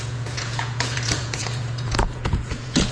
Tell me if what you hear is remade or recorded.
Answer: remade